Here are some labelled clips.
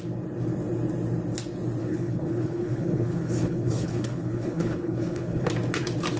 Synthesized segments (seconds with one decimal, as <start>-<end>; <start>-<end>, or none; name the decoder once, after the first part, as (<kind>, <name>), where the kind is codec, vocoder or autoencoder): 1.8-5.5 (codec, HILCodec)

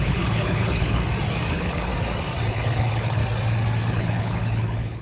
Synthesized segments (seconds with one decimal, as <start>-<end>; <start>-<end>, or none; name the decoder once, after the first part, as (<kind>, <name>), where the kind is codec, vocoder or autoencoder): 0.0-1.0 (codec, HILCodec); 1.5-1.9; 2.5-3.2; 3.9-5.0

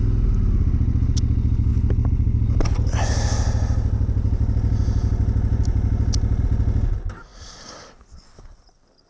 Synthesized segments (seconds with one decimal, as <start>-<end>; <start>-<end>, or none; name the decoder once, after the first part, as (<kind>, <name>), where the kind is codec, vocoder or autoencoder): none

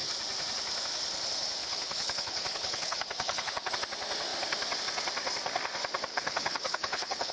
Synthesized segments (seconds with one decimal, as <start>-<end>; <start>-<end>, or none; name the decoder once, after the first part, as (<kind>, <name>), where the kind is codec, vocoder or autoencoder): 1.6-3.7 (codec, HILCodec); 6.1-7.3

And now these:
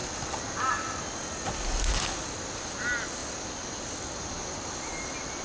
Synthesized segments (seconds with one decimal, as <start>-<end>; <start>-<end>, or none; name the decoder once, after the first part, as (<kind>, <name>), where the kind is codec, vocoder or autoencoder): none

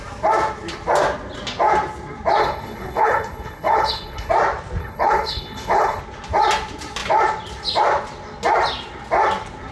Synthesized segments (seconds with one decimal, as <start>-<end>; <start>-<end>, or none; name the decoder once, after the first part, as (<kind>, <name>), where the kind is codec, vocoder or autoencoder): 2.4-4.3 (codec, HILCodec); 4.8-6.0

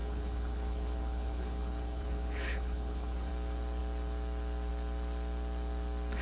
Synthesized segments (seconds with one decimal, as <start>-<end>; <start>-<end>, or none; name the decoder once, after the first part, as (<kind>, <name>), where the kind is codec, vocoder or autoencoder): 0.0-3.3 (codec, HILCodec)